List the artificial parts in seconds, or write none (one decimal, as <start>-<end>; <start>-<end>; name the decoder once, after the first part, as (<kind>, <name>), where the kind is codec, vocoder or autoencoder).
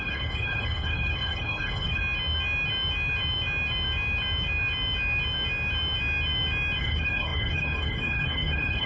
0.0-2.0 (codec, HILCodec); 6.8-8.9